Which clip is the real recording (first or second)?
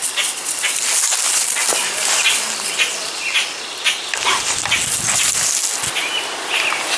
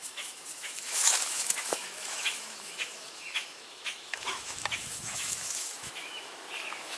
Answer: first